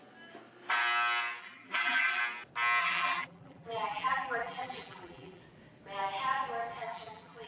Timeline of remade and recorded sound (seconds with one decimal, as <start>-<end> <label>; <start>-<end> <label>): 0.0-1.4 recorded; 1.4-2.2 remade; 2.2-2.8 recorded; 2.8-5.4 remade; 5.4-6.8 recorded; 6.8-7.5 remade